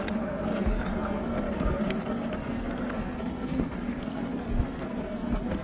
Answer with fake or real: fake